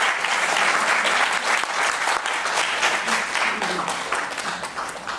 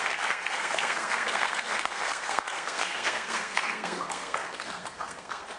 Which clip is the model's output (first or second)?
second